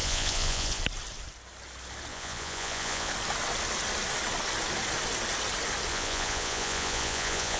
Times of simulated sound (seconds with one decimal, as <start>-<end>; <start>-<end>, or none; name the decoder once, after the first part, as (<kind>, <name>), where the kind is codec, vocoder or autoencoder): 0.0-0.8 (vocoder, Vocos); 2.1-3.1; 5.9-7.6